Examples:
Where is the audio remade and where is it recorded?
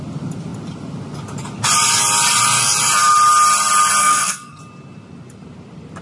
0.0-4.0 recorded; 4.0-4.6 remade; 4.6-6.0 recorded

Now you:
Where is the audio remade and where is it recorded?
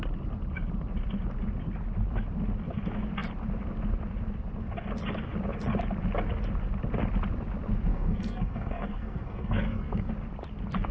0.0-7.9 recorded; 7.9-10.1 remade; 10.1-10.9 recorded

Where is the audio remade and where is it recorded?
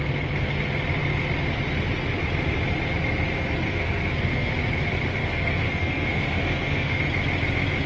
0.0-3.6 recorded; 3.6-4.5 remade; 4.5-5.2 recorded; 5.2-7.0 remade; 7.0-7.9 recorded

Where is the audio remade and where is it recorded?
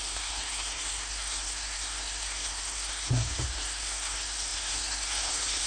0.0-5.7 remade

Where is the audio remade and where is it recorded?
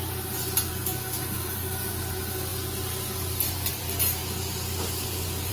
0.0-0.7 recorded; 0.7-1.9 remade; 1.9-5.5 recorded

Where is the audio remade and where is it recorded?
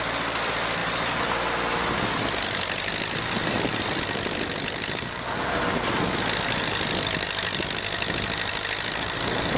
0.0-9.6 recorded